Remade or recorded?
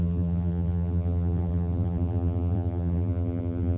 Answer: remade